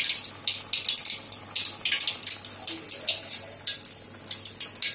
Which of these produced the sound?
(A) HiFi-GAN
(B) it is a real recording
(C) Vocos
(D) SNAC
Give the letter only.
B